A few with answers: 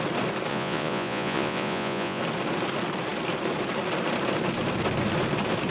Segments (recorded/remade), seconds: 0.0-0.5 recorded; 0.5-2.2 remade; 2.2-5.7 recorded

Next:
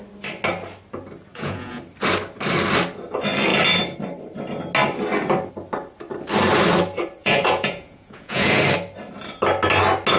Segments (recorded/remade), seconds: 0.0-1.3 recorded; 1.3-1.8 remade; 1.8-7.2 recorded; 7.2-8.6 remade; 8.6-10.2 recorded

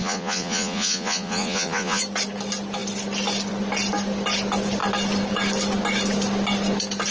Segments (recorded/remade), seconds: 0.0-2.0 remade; 2.0-7.1 recorded

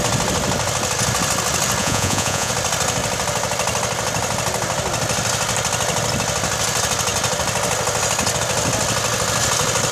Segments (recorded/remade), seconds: 0.0-1.8 recorded; 1.8-2.5 remade; 2.5-9.9 recorded

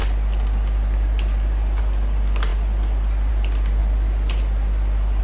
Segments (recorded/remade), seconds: 0.0-5.2 recorded

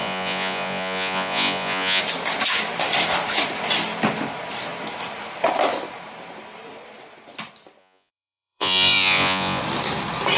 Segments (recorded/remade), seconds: 0.0-2.0 remade; 2.0-7.8 recorded; 7.8-9.6 remade; 9.6-10.4 recorded

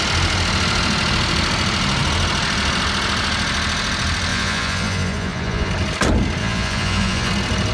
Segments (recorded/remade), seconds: 0.0-4.3 recorded; 4.3-5.7 remade; 5.7-6.4 recorded; 6.4-7.3 remade; 7.3-7.7 recorded

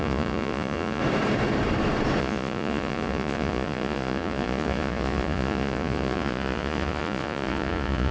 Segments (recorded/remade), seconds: 0.0-1.0 remade; 1.0-2.2 recorded; 2.2-8.1 remade